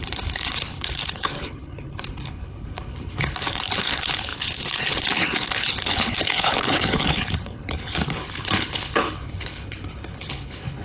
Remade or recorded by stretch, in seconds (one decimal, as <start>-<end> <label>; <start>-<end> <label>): 0.0-10.8 remade